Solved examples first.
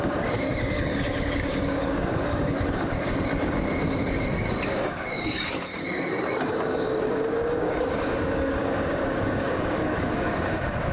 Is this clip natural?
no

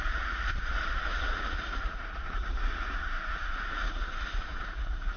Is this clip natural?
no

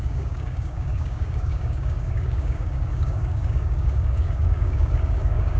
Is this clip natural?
no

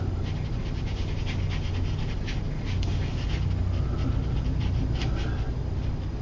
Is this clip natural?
yes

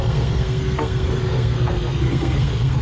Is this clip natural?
no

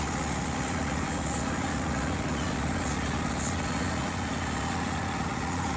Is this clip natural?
no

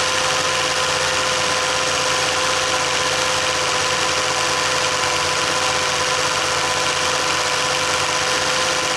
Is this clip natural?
yes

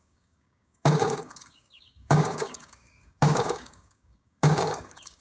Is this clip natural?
no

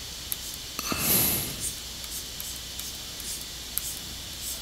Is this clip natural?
yes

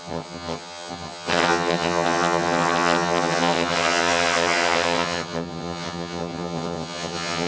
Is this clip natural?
no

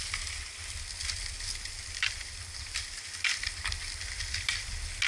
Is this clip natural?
yes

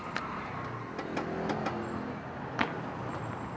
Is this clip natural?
yes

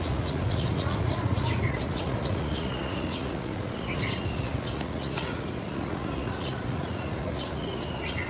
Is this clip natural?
no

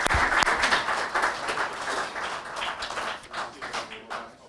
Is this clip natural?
yes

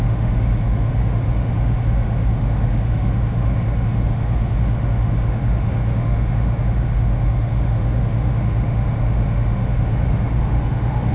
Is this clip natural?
no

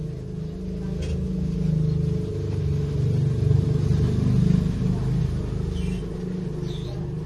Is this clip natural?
yes